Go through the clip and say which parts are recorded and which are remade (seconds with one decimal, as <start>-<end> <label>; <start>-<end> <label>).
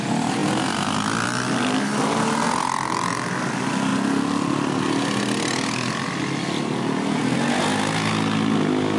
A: 0.0-9.0 recorded